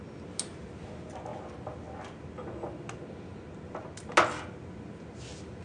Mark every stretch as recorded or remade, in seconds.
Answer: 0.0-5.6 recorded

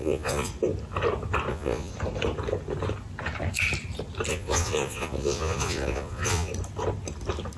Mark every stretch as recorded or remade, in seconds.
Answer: 0.0-0.5 remade; 0.5-1.5 recorded; 1.5-1.9 remade; 1.9-4.3 recorded; 4.3-6.5 remade; 6.5-7.6 recorded

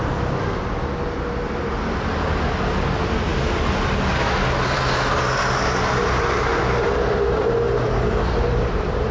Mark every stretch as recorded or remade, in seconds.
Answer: 0.0-9.1 recorded

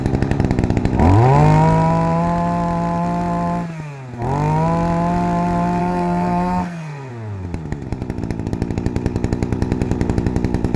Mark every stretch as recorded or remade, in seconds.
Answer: 0.0-5.8 recorded; 5.8-7.1 remade; 7.1-10.8 recorded

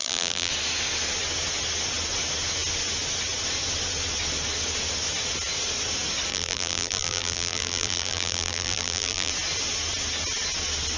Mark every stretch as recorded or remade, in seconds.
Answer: 0.0-0.5 remade; 0.5-6.3 recorded; 6.3-9.3 remade; 9.3-11.0 recorded

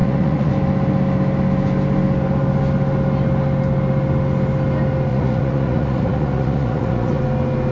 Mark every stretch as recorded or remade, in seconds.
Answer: 0.0-0.5 remade; 0.5-5.1 recorded; 5.1-7.2 remade; 7.2-7.7 recorded